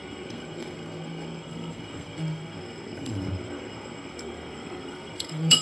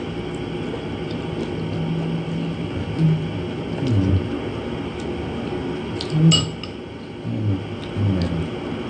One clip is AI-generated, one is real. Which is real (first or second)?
second